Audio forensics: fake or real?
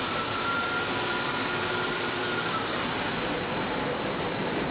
fake